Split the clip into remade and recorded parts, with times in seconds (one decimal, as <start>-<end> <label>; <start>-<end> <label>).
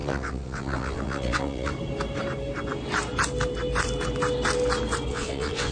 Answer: 0.0-1.7 remade; 1.7-5.1 recorded; 5.1-5.7 remade